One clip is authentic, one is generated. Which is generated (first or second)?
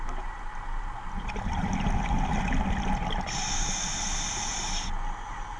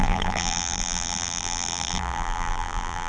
second